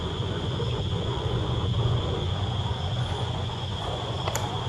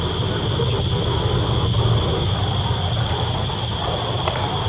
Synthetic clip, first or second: first